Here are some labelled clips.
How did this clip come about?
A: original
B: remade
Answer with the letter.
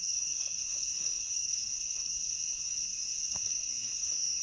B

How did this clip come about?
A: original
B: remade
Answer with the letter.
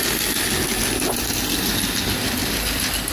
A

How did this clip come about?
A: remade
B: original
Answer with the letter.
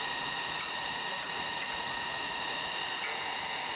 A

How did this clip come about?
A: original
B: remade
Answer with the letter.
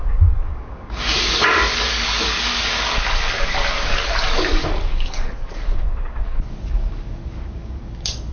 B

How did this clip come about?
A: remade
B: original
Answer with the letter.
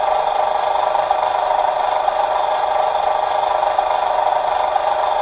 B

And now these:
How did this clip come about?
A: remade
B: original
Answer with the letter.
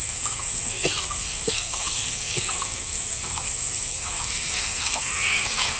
A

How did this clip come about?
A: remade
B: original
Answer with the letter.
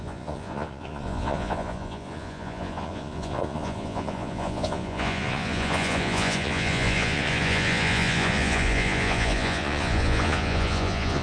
A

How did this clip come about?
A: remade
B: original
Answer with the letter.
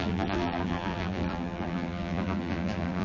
A